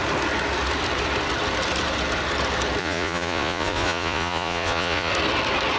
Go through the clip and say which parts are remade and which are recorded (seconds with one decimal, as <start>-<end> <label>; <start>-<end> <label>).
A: 0.0-2.8 recorded; 2.8-5.1 remade; 5.1-5.8 recorded